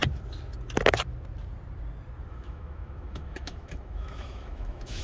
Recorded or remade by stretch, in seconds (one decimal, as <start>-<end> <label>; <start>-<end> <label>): 0.0-2.3 recorded; 2.3-5.0 remade